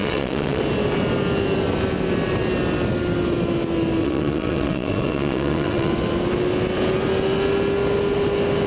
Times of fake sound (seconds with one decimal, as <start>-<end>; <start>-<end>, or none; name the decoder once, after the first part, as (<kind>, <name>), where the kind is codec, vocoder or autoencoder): 0.0-0.6 (vocoder, WaveNeXt); 4.0-5.9